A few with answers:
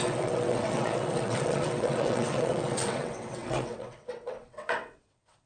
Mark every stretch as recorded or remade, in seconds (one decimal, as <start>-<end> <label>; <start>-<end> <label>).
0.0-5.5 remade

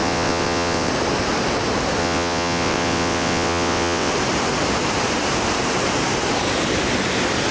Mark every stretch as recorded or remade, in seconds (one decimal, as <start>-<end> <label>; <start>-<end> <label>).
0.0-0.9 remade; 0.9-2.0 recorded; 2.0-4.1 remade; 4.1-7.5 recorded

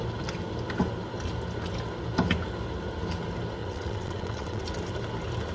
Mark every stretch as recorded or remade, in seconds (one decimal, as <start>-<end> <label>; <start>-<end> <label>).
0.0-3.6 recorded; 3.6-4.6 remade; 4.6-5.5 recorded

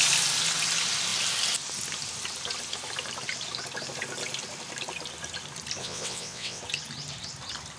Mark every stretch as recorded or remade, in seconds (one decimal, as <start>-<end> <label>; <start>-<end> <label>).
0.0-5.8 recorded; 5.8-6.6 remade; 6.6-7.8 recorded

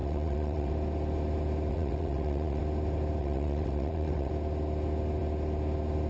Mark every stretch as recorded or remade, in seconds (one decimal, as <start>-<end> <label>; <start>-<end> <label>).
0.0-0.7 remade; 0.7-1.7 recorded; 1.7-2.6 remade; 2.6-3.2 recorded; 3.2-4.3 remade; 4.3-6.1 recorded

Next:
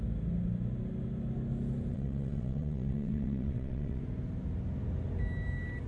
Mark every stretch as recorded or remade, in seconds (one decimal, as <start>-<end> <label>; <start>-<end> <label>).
0.0-1.9 recorded; 1.9-4.0 remade; 4.0-5.9 recorded